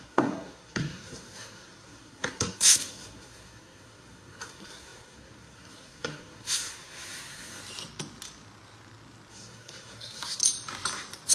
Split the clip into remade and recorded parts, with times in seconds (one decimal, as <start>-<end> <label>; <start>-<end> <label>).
0.0-7.6 remade; 7.6-9.3 recorded; 9.3-10.4 remade; 10.4-11.3 recorded